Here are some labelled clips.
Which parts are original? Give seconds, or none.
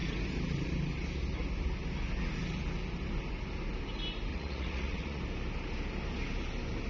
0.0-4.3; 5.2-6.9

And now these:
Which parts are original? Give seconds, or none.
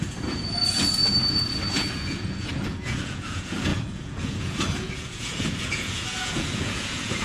1.0-1.7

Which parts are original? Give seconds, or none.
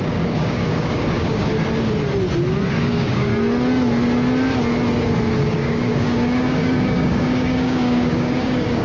1.5-2.7; 3.3-5.4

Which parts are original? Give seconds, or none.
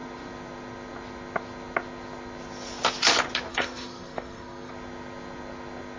0.0-3.5; 4.7-6.0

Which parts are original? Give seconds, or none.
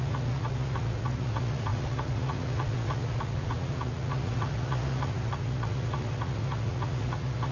none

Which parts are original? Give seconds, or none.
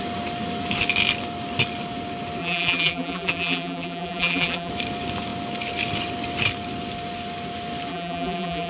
0.0-2.4; 4.7-7.9